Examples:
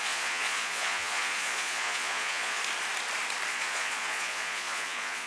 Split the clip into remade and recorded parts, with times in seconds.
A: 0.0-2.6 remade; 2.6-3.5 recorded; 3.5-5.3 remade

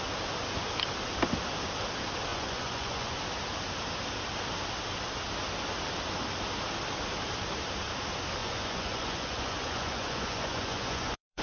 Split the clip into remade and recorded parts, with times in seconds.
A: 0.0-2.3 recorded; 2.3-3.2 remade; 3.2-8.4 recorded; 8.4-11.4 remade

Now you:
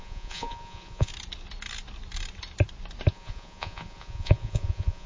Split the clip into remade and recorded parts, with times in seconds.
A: 0.0-1.1 remade; 1.1-3.1 recorded; 3.1-5.1 remade

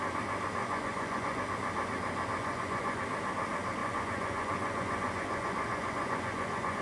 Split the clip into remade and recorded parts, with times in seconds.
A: 0.0-0.6 recorded; 0.6-1.4 remade; 1.4-2.4 recorded; 2.4-3.0 remade; 3.0-3.8 recorded; 3.8-6.8 remade

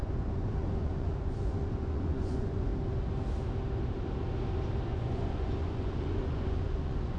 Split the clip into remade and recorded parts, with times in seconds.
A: 0.0-2.7 remade; 2.7-4.9 recorded; 4.9-7.2 remade